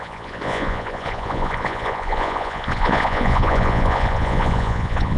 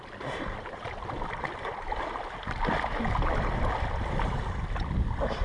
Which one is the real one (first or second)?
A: second